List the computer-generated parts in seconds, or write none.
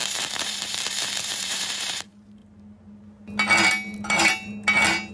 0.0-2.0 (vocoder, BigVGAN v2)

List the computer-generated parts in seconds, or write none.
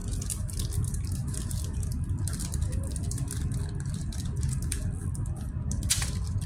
1.5-1.9 (vocoder, BigVGAN v2); 3.0-6.5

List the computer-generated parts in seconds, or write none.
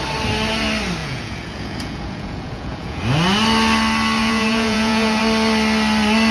1.0-3.0 (vocoder, Vocos); 4.2-5.2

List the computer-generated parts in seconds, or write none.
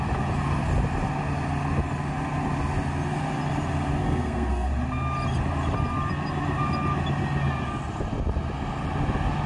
4.0-4.7 (codec, SNAC)